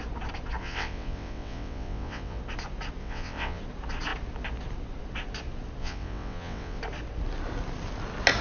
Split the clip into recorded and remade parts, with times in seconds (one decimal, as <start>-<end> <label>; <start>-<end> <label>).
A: 0.0-0.6 recorded; 0.6-2.4 remade; 2.4-3.0 recorded; 3.0-3.6 remade; 3.6-5.8 recorded; 5.8-6.8 remade; 6.8-8.4 recorded